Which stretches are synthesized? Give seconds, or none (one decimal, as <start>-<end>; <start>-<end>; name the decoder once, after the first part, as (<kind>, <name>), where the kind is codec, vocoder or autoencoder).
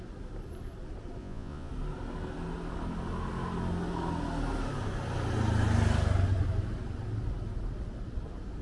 1.2-1.7 (vocoder, Vocos)